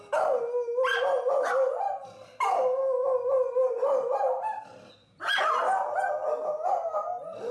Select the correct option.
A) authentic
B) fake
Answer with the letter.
A